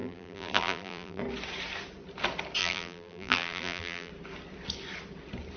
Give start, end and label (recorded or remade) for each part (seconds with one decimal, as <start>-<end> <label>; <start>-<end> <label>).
0.0-1.2 remade; 1.2-2.6 recorded; 2.6-4.1 remade; 4.1-5.6 recorded